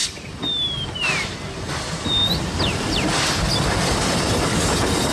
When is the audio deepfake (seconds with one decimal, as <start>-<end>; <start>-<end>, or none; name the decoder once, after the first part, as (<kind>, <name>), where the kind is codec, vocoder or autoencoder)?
none